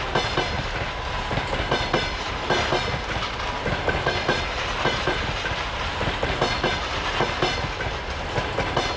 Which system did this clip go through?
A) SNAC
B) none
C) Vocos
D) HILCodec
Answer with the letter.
B